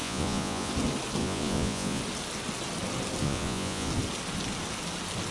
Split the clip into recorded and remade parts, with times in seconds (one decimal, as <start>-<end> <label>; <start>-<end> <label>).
0.0-0.7 remade; 0.7-1.2 recorded; 1.2-2.0 remade; 2.0-3.2 recorded; 3.2-3.9 remade; 3.9-5.3 recorded